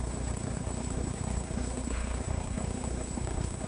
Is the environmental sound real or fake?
fake